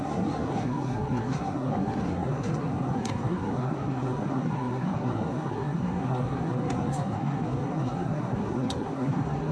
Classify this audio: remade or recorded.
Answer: remade